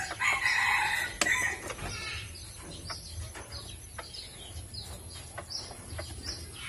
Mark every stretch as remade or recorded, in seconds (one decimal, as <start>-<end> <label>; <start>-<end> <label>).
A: 0.0-6.7 recorded

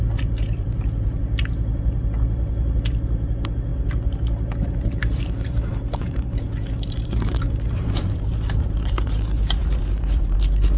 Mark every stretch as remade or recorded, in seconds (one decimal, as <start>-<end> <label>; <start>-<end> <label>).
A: 0.0-10.8 remade

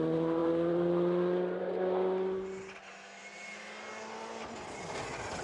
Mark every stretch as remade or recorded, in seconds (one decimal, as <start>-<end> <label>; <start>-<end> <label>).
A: 0.0-5.4 recorded

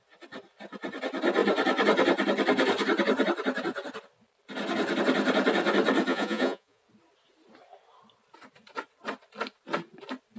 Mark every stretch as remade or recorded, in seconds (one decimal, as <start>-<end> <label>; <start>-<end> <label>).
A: 0.0-6.1 recorded; 6.1-6.8 remade; 6.8-10.4 recorded

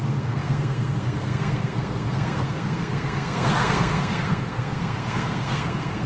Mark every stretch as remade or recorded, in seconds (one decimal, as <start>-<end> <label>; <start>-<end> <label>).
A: 0.0-6.1 remade

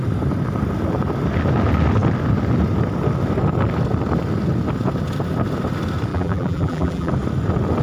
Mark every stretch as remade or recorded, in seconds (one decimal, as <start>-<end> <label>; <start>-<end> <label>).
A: 0.0-6.1 recorded; 6.1-7.1 remade; 7.1-7.8 recorded

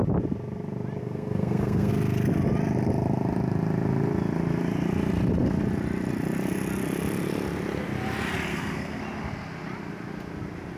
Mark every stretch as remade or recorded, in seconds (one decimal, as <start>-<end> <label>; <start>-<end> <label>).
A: 0.0-1.0 recorded; 1.0-1.9 remade; 1.9-8.5 recorded; 8.5-9.0 remade; 9.0-10.8 recorded